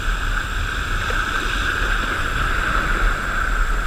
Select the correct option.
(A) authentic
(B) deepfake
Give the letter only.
A